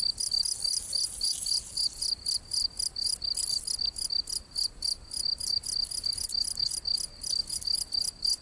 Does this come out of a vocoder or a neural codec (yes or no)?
no